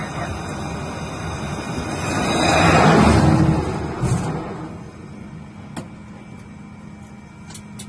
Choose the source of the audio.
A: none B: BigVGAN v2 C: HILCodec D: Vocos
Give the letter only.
A